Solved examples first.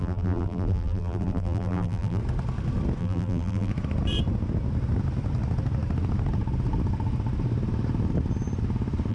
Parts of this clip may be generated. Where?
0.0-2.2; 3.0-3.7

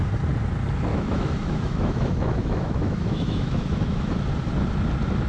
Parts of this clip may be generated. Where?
0.9-4.1

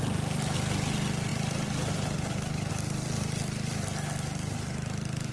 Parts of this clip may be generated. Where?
1.3-2.7

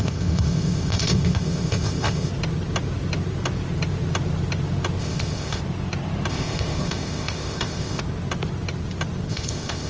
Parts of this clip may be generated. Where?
0.0-2.3; 5.0-5.6; 6.3-8.0; 9.3-9.9

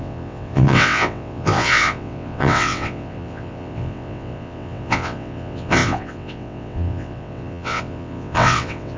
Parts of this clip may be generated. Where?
0.0-9.0

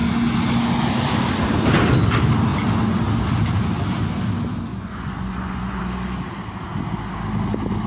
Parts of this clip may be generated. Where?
4.7-5.8

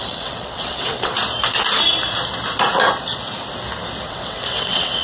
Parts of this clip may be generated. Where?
0.0-1.1; 4.1-5.0